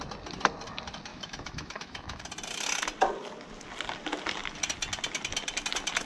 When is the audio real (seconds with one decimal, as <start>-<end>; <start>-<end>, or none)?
0.0-1.1; 2.2-6.0